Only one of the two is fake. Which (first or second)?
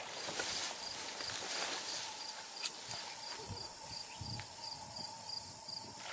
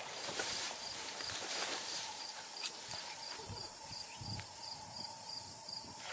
second